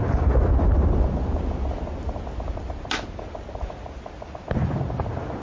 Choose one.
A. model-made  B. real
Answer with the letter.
B